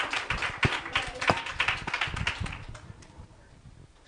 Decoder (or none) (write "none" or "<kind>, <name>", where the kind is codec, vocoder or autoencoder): none